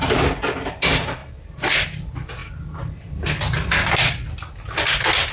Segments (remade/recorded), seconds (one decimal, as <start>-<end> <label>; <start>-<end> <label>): 0.0-1.2 remade; 1.2-1.8 recorded; 1.8-2.4 remade; 2.4-5.3 recorded